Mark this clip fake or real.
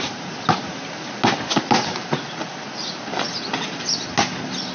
real